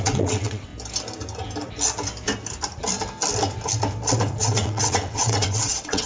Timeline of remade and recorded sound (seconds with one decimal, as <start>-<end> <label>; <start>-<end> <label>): 0.0-0.7 remade; 0.7-4.4 recorded; 4.4-6.1 remade